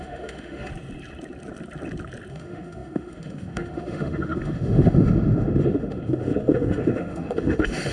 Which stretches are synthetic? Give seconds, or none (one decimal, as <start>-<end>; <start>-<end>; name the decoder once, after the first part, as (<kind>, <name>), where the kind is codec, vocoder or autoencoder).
0.0-0.7 (autoencoder, DAC-VAE); 2.3-7.9